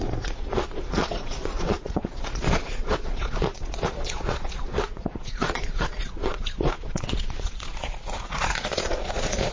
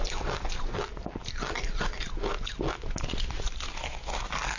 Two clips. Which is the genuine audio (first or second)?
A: second